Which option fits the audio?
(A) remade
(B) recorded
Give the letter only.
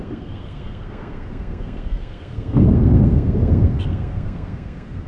A